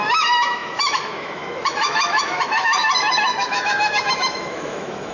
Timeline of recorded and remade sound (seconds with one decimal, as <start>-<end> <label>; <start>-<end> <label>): 0.0-5.1 remade